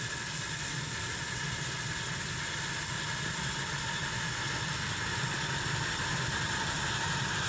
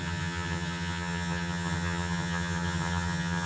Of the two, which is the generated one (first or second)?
second